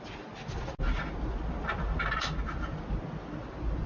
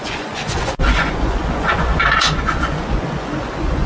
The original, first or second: first